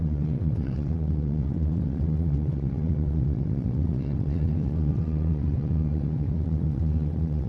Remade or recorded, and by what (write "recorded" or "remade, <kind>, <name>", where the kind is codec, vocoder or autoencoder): remade, vocoder, WaveNeXt